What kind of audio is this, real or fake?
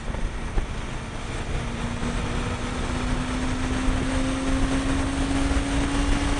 real